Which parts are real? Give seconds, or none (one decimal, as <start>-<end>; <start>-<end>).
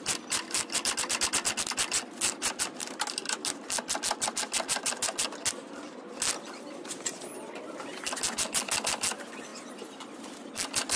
0.0-11.0